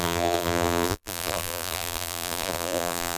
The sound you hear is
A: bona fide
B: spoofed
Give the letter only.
B